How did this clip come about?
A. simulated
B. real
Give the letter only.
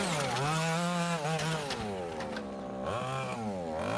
B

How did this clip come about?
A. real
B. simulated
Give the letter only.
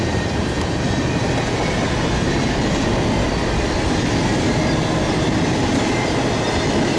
A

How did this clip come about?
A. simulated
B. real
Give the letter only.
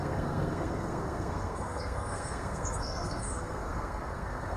A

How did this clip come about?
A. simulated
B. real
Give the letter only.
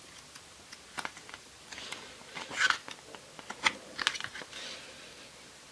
B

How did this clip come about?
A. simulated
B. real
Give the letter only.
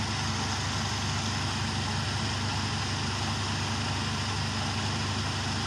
B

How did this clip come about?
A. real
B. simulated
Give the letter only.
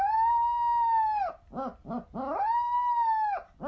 A